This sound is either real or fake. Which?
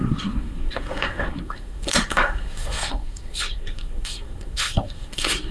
fake